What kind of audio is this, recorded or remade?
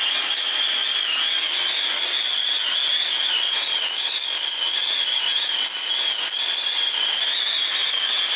recorded